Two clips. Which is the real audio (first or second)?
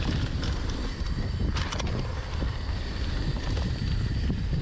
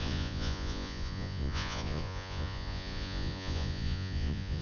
first